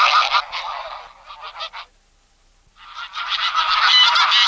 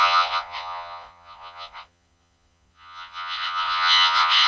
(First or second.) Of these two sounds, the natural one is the first